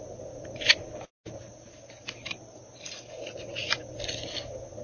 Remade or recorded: recorded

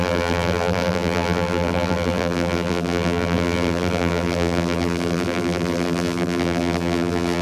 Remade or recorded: remade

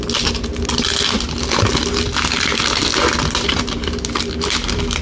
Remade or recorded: recorded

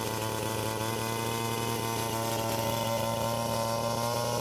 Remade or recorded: recorded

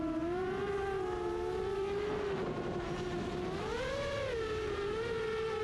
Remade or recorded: recorded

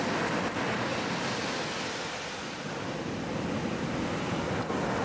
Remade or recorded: recorded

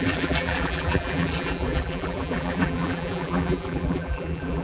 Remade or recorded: remade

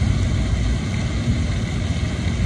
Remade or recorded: recorded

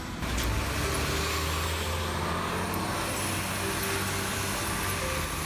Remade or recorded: recorded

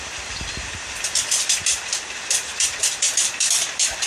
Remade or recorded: remade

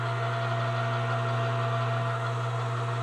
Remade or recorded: recorded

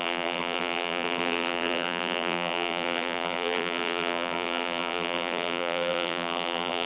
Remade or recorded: remade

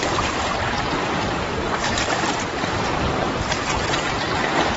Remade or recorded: remade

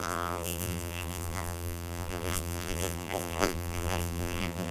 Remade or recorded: remade